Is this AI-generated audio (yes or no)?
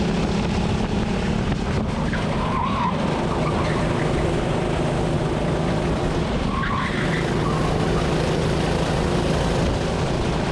no